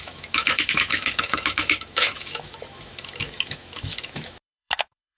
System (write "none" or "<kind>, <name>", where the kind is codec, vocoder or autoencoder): autoencoder, DAC-VAE